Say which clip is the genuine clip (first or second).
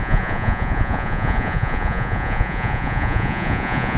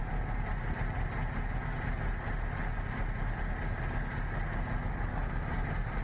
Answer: second